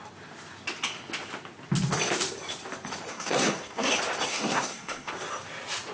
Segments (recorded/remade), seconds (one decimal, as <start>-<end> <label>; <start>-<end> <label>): 0.0-3.1 recorded; 3.1-3.9 remade; 3.9-4.3 recorded; 4.3-5.1 remade; 5.1-5.9 recorded